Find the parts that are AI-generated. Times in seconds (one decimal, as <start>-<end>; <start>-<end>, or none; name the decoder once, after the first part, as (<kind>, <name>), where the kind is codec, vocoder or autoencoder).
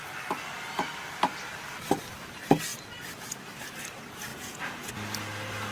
4.3-4.9 (vocoder, Vocos)